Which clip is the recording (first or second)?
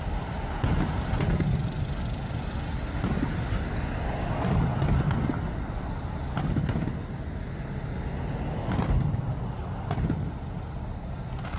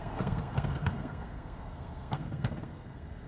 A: first